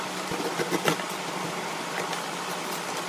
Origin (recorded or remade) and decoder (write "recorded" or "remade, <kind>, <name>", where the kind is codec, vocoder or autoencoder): recorded